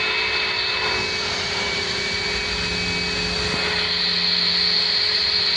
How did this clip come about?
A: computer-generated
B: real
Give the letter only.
B